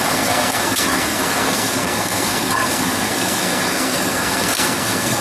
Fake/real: fake